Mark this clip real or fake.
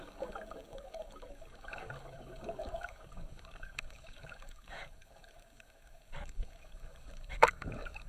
fake